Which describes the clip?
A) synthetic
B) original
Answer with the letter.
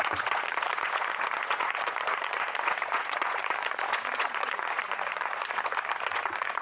A